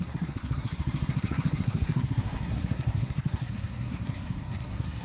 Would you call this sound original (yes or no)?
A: no